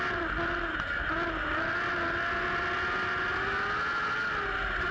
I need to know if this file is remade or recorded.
recorded